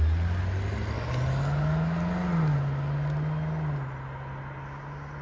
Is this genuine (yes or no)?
yes